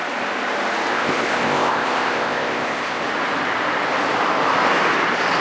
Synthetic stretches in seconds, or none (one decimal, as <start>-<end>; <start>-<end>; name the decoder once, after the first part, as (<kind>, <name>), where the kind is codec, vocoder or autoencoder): 0.9-3.0 (codec, ZipCodec)